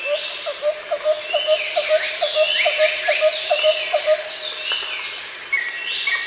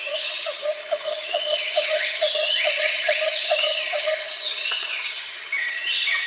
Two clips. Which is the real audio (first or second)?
first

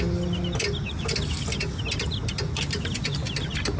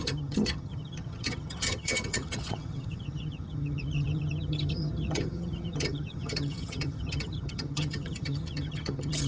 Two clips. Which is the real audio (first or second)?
first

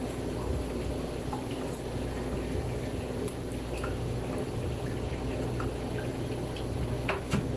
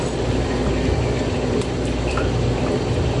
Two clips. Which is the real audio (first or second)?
first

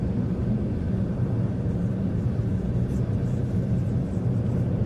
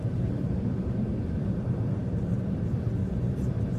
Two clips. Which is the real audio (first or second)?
first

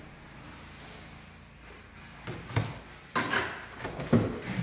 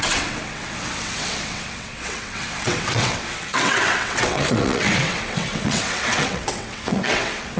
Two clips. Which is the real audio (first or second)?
first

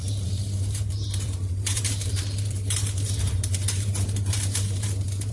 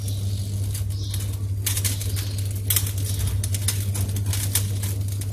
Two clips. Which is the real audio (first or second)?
second